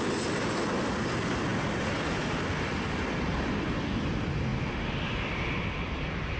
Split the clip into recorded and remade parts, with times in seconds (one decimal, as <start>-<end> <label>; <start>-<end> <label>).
0.0-6.4 recorded